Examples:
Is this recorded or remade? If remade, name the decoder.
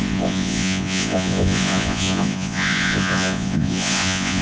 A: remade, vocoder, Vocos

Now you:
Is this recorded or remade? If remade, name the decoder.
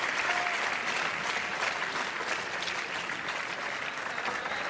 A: recorded